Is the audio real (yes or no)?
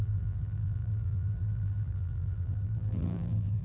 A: no